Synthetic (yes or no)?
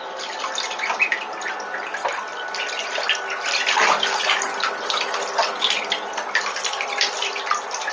yes